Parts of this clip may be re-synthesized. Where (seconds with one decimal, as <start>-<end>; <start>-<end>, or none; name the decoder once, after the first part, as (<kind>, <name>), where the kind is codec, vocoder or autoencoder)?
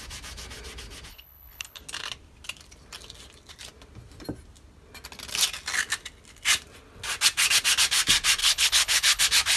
1.1-1.8 (codec, HILCodec); 8.4-9.2